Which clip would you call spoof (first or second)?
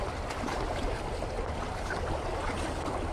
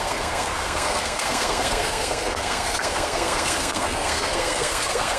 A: second